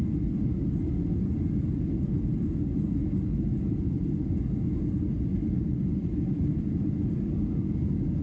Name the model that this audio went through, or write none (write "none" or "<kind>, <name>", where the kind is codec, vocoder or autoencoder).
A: none